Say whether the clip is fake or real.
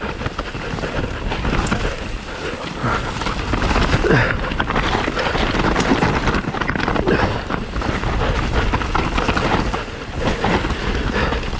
real